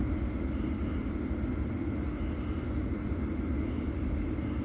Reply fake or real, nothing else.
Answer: real